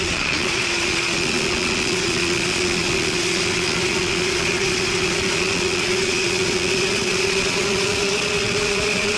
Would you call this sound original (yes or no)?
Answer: no